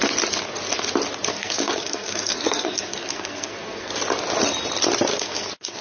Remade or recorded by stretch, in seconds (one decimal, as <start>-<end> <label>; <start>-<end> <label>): 0.0-1.3 recorded; 1.3-3.9 remade; 3.9-5.1 recorded; 5.1-5.8 remade